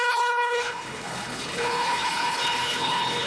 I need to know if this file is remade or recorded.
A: remade